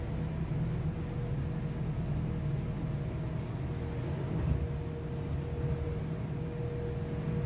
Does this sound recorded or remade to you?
recorded